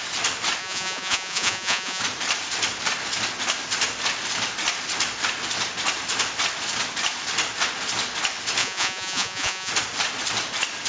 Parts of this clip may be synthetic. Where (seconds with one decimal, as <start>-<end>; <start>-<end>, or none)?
0.6-2.0; 8.6-9.7